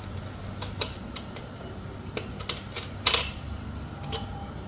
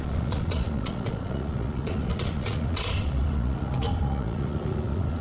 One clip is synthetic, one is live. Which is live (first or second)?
first